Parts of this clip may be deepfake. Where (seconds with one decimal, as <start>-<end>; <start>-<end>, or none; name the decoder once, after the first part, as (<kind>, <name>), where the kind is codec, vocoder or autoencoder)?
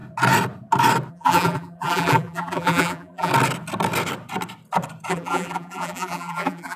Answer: 1.1-3.3 (vocoder, BigVGAN v2); 5.1-6.8